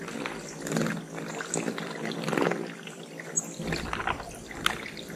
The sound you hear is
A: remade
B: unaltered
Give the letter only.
B